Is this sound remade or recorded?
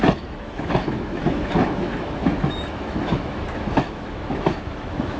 remade